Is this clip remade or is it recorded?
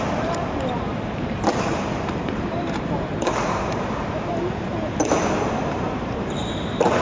remade